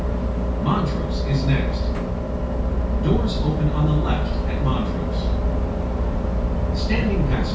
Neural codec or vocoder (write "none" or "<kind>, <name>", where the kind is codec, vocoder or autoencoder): none